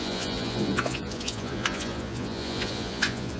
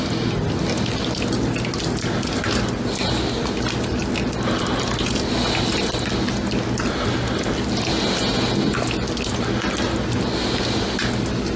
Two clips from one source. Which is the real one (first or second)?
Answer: second